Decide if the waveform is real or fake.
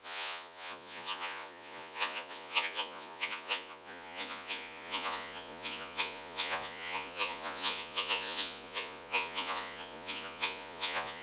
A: fake